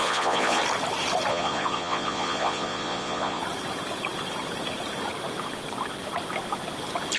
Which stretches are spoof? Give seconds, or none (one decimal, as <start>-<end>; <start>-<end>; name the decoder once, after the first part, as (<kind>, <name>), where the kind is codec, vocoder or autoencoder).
0.0-0.6 (vocoder, Vocos); 1.3-3.4